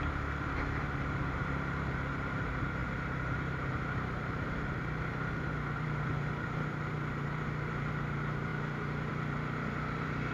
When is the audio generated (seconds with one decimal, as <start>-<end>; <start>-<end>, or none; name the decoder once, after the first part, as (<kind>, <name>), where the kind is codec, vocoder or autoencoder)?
0.0-10.3 (vocoder, BigVGAN v2)